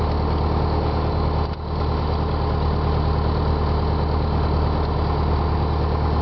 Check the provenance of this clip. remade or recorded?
recorded